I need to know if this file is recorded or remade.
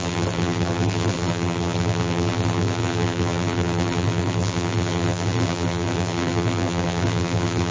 remade